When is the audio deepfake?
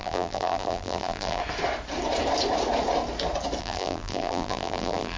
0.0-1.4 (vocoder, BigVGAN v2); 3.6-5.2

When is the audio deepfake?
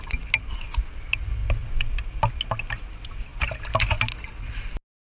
none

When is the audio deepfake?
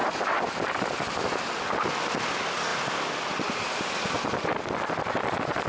0.0-1.4 (vocoder, BigVGAN v2); 2.7-4.7